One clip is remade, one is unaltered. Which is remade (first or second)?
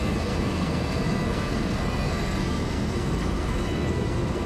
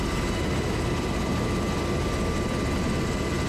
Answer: first